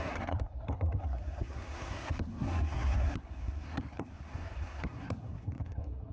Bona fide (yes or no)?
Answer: no